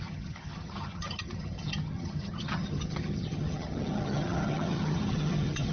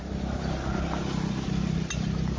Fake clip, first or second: first